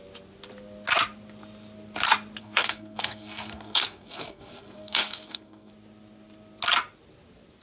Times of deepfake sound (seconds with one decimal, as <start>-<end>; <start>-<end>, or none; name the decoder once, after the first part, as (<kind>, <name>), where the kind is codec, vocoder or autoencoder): 2.4-5.7 (codec, SNAC)